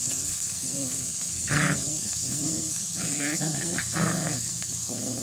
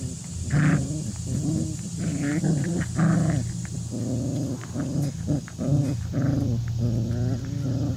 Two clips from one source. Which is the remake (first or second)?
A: first